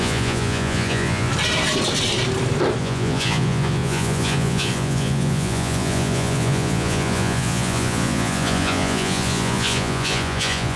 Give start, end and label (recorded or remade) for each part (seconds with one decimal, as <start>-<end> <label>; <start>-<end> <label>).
0.0-1.3 remade; 1.3-2.8 recorded; 2.8-10.8 remade